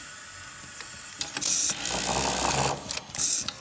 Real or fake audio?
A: real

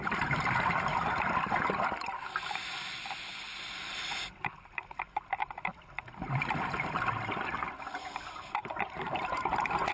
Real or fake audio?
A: fake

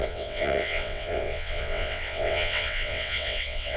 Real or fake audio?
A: fake